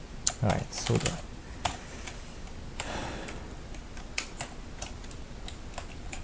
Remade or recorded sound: recorded